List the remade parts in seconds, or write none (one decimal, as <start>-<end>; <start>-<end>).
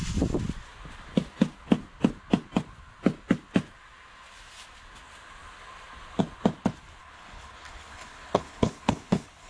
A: 7.0-9.5